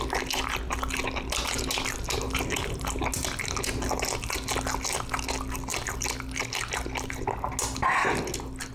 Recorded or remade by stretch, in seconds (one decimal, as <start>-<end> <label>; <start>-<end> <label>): 0.0-8.7 recorded